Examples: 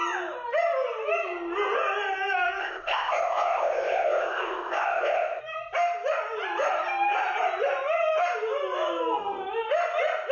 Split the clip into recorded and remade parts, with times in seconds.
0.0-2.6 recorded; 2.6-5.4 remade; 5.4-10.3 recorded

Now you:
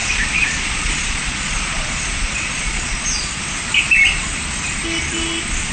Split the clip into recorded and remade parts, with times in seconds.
0.0-3.4 remade; 3.4-5.7 recorded

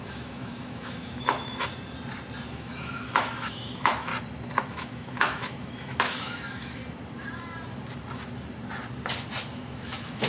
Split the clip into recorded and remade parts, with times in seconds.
0.0-1.4 remade; 1.4-2.5 recorded; 2.5-4.1 remade; 4.1-4.7 recorded; 4.7-6.8 remade; 6.8-9.5 recorded; 9.5-10.3 remade

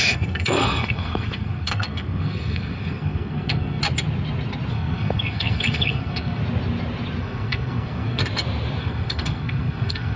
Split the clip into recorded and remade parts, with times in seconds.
0.0-3.8 remade; 3.8-4.7 recorded; 4.7-6.4 remade; 6.4-7.2 recorded; 7.2-8.2 remade; 8.2-8.8 recorded; 8.8-10.2 remade

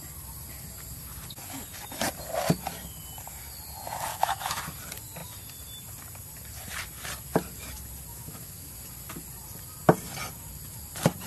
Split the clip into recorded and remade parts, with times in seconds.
0.0-4.1 recorded; 4.1-4.6 remade; 4.6-8.1 recorded; 8.1-8.7 remade; 8.7-11.3 recorded

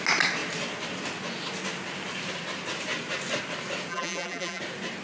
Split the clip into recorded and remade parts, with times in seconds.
0.0-3.9 recorded; 3.9-4.6 remade; 4.6-5.0 recorded

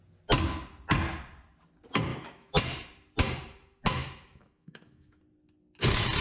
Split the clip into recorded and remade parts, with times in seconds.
0.0-2.1 recorded; 2.1-2.6 remade; 2.6-4.0 recorded; 4.0-5.2 remade; 5.2-6.2 recorded

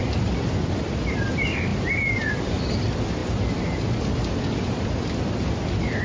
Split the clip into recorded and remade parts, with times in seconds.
0.0-6.0 recorded